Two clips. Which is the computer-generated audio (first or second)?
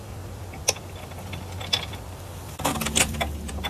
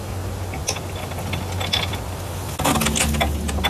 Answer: first